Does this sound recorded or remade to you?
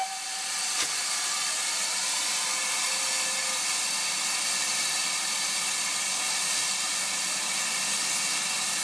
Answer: recorded